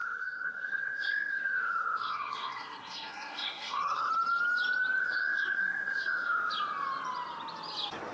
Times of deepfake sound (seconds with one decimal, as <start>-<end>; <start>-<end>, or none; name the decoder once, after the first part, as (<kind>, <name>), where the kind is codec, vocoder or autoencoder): 0.0-4.1 (codec, SNAC); 5.0-6.5